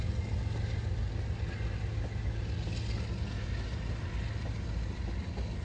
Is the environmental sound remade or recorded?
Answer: recorded